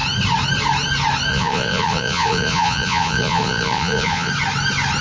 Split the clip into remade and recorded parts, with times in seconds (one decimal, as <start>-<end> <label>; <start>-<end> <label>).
0.0-1.3 recorded; 1.3-4.3 remade; 4.3-5.0 recorded